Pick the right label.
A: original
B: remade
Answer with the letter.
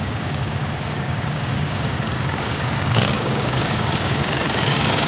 B